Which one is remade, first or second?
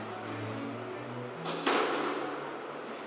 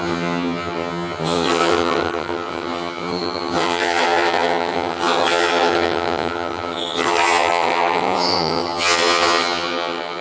second